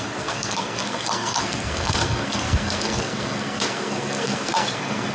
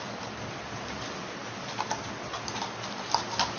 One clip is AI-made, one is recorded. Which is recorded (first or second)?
second